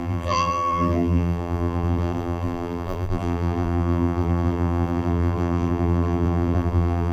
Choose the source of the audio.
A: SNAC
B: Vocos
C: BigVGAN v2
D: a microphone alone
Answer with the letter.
C